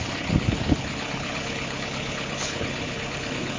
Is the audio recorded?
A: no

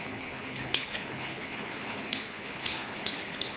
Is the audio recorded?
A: no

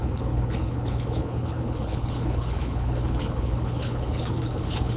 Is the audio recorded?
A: no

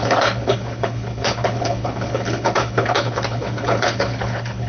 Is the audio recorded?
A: no